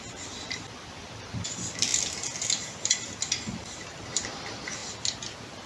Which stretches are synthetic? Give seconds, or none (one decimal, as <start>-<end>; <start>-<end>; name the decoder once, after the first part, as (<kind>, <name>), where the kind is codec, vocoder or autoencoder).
0.0-1.9 (vocoder, BigVGAN v2); 3.5-4.8